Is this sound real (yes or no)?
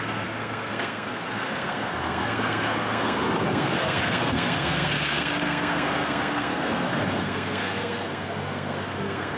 no